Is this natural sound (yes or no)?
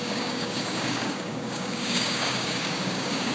no